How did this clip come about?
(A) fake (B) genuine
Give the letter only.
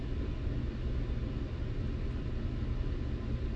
B